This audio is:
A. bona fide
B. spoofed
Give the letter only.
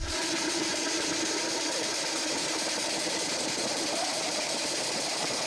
B